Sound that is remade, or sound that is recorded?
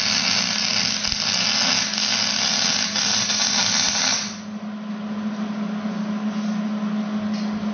recorded